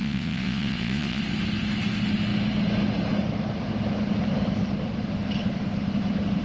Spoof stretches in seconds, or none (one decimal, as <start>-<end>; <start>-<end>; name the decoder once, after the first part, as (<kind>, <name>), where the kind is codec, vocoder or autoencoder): 0.0-1.2 (vocoder, Vocos)